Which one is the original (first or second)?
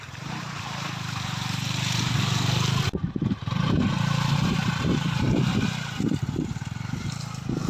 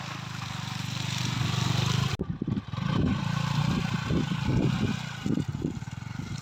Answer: second